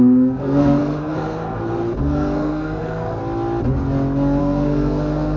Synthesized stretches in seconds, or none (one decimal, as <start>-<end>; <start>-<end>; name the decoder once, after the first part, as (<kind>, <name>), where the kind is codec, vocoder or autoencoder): 0.0-3.2 (codec, SNAC); 4.4-5.4